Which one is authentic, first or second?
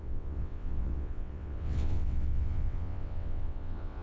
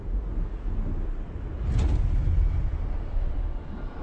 second